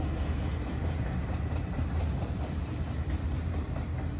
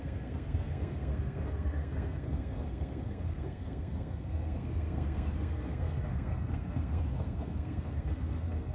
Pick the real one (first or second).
first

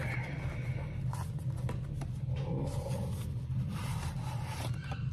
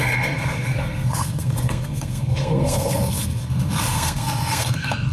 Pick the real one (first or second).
first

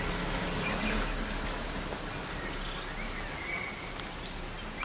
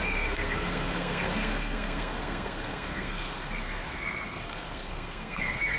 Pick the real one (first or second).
first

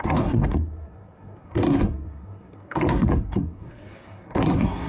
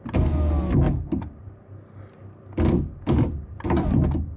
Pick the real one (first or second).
second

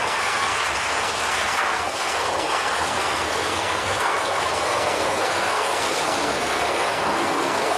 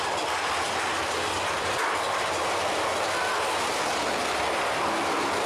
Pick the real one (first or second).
second